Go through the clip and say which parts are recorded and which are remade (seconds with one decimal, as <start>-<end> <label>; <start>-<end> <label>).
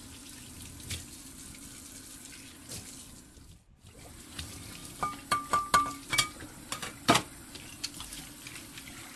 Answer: 0.0-9.2 recorded